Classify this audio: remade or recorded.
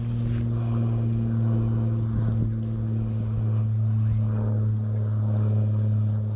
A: recorded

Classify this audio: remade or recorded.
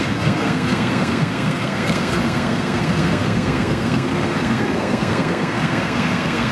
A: remade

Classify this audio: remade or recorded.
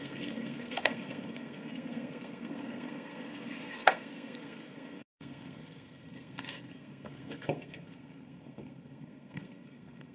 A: remade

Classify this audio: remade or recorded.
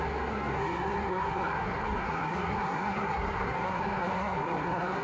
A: remade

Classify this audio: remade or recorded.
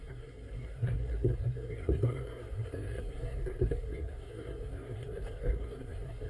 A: remade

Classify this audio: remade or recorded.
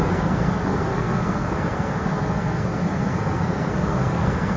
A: remade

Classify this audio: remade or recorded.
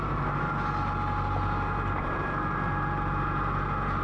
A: recorded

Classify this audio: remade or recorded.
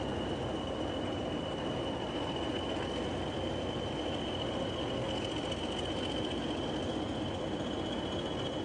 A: recorded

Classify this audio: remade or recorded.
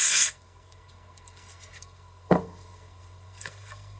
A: remade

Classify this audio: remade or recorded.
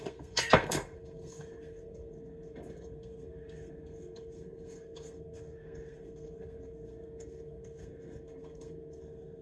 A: remade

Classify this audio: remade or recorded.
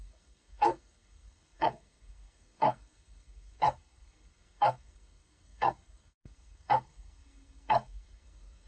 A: remade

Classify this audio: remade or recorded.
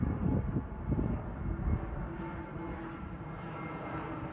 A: recorded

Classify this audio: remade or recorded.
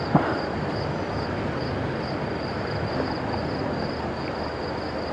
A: recorded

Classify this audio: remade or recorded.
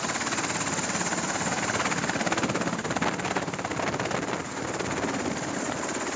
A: recorded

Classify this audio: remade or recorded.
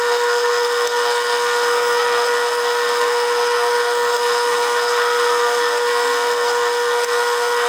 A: remade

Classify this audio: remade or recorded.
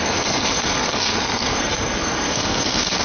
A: remade